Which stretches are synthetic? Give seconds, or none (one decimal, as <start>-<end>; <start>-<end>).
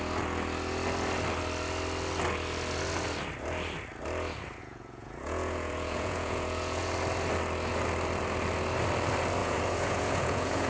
4.6-6.9; 9.4-10.7